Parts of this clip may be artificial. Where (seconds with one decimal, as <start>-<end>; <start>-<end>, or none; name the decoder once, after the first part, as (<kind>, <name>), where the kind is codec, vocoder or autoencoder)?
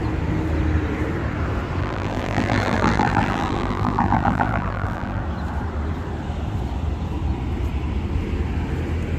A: 1.8-5.2 (vocoder, BigVGAN v2)